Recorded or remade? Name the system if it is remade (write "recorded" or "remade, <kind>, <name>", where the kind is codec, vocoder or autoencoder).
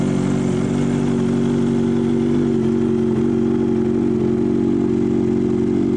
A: recorded